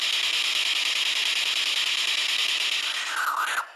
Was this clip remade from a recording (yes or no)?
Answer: no